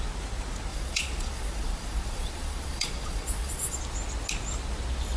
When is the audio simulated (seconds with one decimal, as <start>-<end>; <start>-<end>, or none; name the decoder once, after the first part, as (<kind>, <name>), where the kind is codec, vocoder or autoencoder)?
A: 0.7-3.8 (vocoder, Vocos)